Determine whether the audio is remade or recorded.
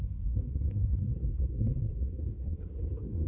remade